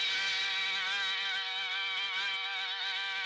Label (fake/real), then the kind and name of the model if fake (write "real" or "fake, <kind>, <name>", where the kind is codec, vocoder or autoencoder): real